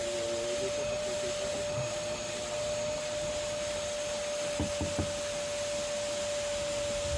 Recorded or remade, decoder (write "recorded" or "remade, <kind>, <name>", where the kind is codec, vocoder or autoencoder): recorded